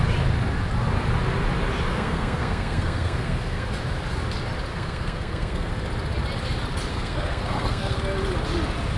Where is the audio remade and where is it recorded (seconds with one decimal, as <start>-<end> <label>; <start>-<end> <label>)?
0.0-1.9 recorded; 1.9-3.7 remade; 3.7-4.7 recorded; 4.7-5.7 remade; 5.7-6.9 recorded; 6.9-8.0 remade; 8.0-9.0 recorded